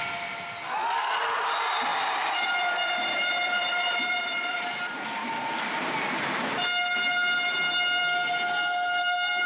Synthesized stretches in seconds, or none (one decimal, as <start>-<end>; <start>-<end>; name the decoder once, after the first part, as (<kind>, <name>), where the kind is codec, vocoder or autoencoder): 1.9-6.0 (vocoder, BigVGAN v2)